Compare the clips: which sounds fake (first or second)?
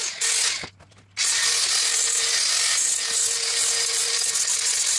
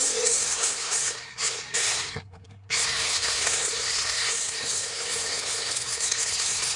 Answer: second